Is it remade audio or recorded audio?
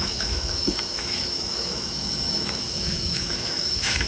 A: remade